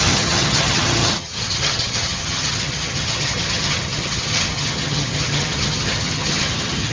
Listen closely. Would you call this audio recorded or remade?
remade